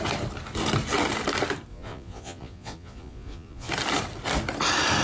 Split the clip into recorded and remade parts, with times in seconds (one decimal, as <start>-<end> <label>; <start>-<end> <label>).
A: 0.0-1.7 recorded; 1.7-3.7 remade; 3.7-5.0 recorded